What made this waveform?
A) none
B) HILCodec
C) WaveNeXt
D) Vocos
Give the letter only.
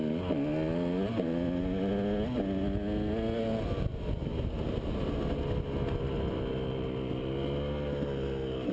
A